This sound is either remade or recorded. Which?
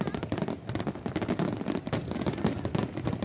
recorded